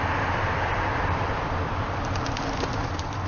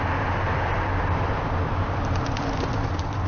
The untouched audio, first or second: second